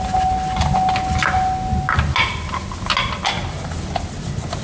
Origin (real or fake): real